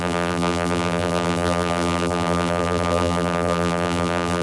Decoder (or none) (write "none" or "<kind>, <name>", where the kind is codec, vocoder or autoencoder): vocoder, BigVGAN v2